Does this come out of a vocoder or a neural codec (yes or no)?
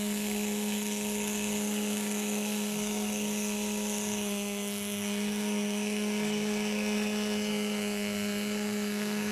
yes